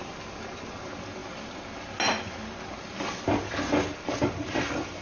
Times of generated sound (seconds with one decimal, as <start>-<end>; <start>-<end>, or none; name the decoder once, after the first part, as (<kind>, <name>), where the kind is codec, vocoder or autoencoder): none